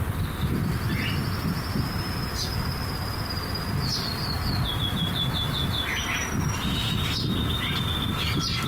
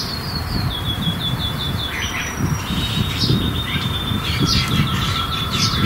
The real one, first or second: first